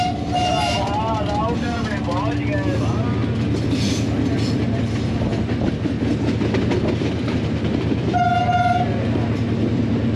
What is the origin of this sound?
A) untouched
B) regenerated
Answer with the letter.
A